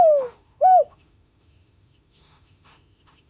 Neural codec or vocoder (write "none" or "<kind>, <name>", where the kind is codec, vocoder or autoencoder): autoencoder, DAC-VAE